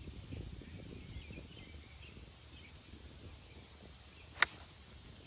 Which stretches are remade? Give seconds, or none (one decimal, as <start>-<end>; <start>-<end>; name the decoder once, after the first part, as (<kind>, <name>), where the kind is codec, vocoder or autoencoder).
none